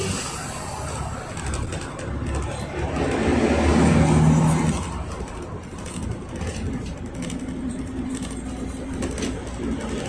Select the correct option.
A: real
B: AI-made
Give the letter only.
A